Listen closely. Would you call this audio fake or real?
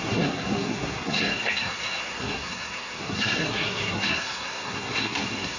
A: fake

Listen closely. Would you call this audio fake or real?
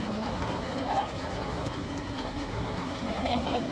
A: fake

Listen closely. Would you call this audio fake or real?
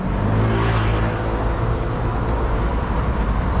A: real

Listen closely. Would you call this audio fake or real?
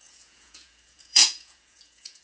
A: fake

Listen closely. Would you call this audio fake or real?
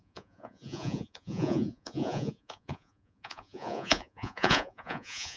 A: fake